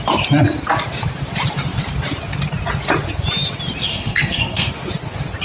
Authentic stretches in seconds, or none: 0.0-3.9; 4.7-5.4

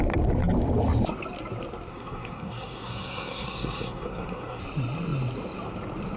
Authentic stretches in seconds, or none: 0.0-1.9; 4.6-6.2